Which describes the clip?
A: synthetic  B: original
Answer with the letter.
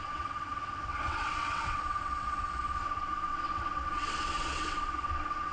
A